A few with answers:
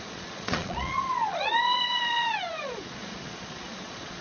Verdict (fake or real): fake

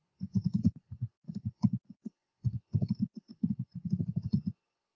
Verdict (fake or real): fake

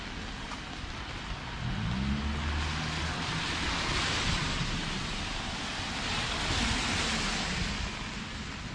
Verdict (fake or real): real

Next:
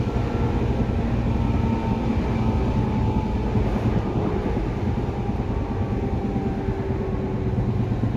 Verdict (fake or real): real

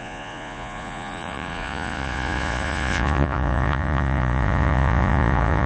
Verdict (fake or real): fake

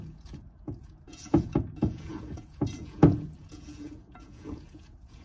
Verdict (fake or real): fake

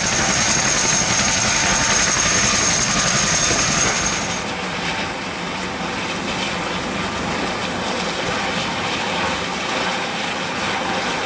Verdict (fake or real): real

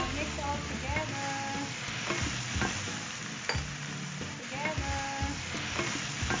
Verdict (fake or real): real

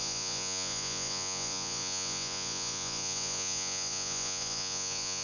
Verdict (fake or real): fake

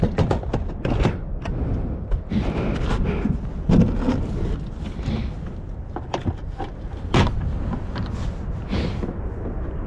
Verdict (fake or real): real